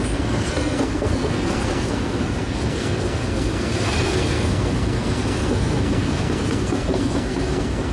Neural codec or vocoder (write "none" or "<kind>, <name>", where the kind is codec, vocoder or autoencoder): codec, SNAC